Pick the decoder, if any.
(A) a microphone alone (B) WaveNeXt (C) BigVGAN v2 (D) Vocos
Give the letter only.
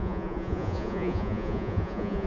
D